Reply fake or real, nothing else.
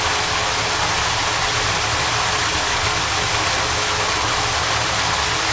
real